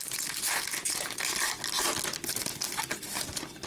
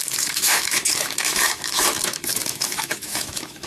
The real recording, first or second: first